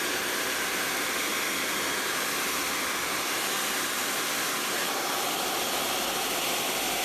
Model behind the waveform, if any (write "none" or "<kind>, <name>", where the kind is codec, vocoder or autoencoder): none